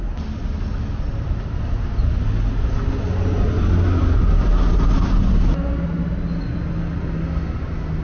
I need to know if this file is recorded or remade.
recorded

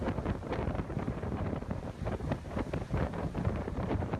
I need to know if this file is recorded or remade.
remade